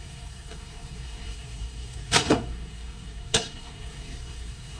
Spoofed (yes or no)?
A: yes